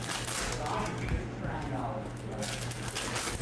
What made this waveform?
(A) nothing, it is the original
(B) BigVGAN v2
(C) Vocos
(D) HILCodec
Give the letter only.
A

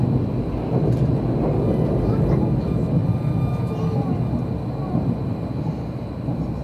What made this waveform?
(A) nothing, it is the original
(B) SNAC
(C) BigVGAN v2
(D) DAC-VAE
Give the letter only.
A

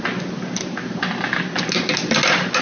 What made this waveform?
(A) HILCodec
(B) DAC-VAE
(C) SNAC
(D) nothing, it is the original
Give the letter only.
D